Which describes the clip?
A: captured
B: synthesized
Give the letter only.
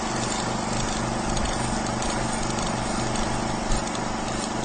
A